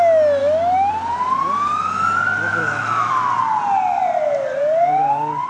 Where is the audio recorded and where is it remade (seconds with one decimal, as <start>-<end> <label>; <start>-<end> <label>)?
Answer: 0.0-0.4 recorded; 0.4-0.9 remade; 0.9-2.5 recorded; 2.5-3.1 remade; 3.1-5.5 recorded